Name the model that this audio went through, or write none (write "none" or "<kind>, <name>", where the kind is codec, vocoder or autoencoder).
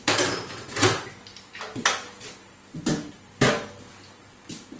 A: none